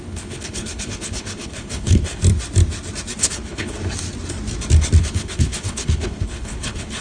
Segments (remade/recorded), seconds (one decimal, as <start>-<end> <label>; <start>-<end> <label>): 0.0-2.2 remade; 2.2-3.2 recorded; 3.2-3.8 remade; 3.8-5.0 recorded; 5.0-7.0 remade